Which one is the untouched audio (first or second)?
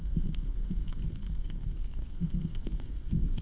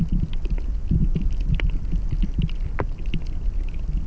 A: second